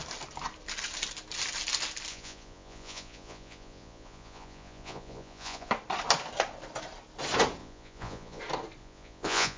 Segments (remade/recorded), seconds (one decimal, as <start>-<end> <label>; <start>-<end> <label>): 0.0-2.1 recorded; 2.1-5.7 remade; 5.7-7.6 recorded; 7.6-8.4 remade; 8.4-8.8 recorded; 8.8-9.6 remade